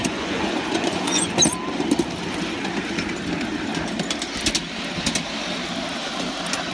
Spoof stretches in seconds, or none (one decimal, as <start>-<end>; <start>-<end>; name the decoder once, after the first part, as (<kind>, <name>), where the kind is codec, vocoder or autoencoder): 0.0-1.4 (vocoder, Vocos)